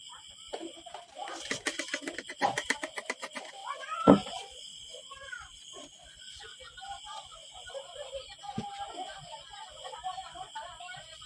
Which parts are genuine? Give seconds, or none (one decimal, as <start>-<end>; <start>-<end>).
0.0-3.6; 6.4-11.3